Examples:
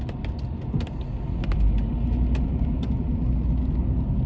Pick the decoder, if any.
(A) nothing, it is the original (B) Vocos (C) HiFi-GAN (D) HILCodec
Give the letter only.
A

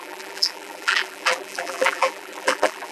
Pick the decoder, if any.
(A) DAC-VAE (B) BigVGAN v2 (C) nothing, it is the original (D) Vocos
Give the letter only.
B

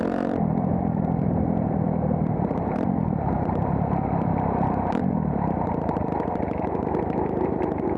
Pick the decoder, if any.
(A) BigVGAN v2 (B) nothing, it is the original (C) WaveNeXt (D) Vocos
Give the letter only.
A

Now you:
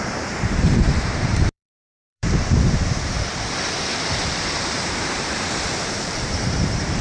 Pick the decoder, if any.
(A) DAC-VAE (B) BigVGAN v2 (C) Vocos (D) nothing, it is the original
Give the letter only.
B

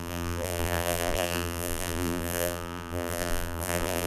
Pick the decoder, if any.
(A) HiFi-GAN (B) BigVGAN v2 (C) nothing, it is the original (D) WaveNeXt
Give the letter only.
B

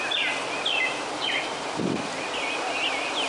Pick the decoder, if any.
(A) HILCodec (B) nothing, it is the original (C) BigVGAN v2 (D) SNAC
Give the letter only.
B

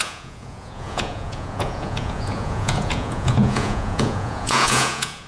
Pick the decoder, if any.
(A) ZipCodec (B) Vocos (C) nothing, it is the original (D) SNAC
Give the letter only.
B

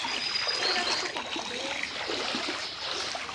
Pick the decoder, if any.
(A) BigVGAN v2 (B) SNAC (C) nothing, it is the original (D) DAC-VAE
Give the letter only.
C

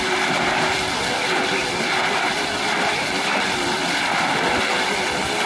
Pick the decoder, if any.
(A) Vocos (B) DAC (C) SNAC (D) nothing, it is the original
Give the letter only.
D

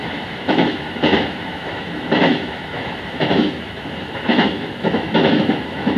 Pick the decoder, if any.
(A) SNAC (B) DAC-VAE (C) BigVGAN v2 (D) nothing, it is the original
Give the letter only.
B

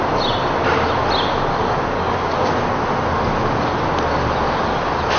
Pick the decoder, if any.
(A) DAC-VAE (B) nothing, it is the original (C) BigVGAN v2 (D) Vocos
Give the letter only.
B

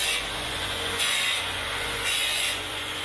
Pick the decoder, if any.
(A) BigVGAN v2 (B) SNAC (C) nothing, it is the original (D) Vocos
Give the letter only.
D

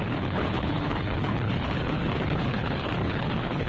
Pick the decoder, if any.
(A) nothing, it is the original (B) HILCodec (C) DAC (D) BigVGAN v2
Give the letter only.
B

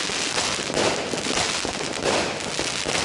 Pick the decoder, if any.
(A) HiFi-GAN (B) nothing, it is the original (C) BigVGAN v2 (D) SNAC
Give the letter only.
B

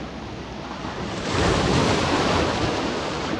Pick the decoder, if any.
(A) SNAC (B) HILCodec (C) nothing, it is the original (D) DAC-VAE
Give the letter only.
C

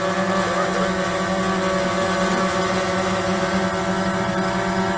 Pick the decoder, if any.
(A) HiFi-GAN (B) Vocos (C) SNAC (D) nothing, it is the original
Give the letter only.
D